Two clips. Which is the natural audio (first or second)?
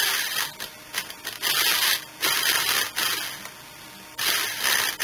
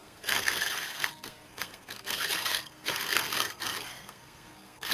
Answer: first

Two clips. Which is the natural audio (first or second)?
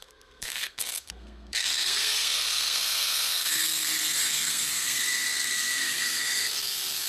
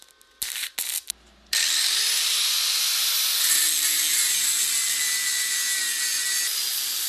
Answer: second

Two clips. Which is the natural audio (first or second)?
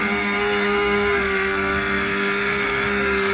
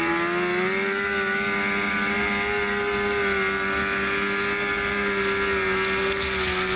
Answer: second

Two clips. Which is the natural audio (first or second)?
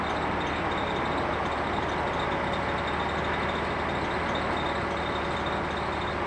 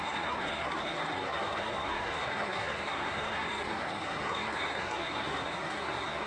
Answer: first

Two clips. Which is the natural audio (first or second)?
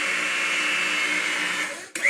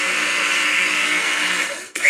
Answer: first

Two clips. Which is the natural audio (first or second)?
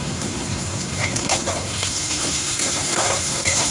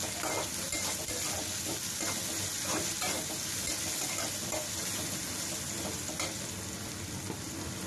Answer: second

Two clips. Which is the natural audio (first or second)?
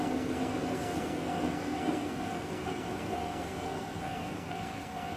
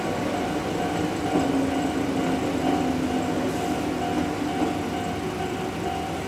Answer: second